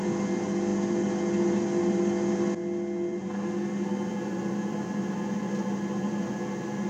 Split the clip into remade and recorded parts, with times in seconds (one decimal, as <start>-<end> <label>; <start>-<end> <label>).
0.0-6.9 recorded